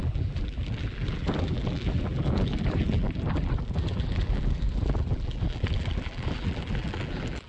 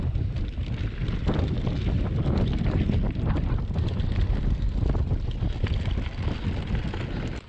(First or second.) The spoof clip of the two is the first